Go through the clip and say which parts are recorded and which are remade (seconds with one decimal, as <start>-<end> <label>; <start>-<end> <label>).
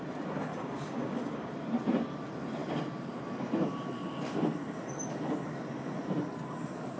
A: 0.0-0.5 recorded; 0.5-1.5 remade; 1.5-7.0 recorded